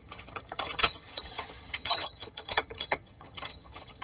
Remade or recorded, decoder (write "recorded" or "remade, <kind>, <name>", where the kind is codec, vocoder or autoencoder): remade, vocoder, HiFi-GAN